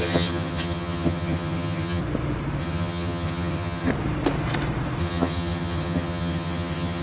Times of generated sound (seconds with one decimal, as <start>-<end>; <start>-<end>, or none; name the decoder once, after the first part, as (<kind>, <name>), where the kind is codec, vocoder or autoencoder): 0.0-2.0 (vocoder, HiFi-GAN); 2.6-3.9; 5.0-7.0